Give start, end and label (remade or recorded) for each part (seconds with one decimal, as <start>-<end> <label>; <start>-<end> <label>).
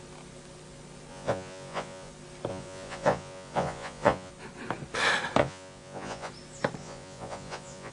0.0-1.1 recorded; 1.1-2.1 remade; 2.1-2.5 recorded; 2.5-4.3 remade; 4.3-5.4 recorded; 5.4-6.3 remade; 6.3-6.8 recorded; 6.8-7.9 remade